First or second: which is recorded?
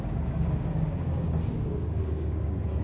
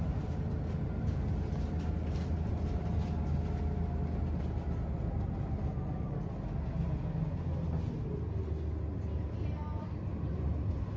second